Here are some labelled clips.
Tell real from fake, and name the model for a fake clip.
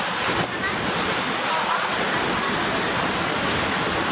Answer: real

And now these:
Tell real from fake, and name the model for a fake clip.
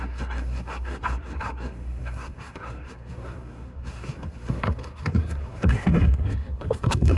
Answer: fake, codec, SNAC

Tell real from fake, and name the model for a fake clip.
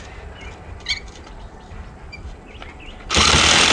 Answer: real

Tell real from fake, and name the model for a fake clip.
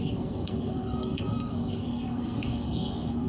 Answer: fake, codec, SNAC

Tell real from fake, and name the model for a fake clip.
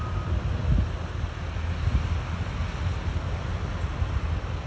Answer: real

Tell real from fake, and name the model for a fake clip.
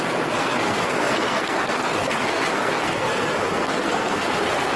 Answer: fake, codec, SNAC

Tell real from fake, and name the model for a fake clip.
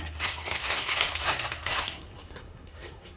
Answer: fake, codec, SNAC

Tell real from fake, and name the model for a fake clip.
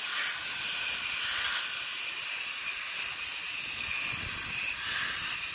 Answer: real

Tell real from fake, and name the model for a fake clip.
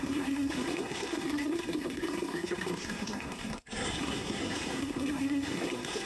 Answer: fake, codec, SNAC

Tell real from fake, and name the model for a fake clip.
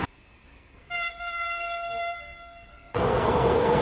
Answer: fake, codec, SNAC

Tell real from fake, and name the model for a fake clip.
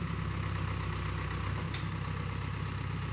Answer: real